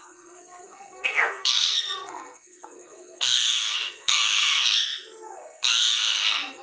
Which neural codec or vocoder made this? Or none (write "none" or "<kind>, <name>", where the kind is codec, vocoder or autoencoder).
codec, SNAC